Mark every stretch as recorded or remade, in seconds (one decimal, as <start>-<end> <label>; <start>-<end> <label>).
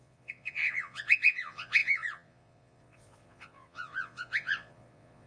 0.0-5.3 remade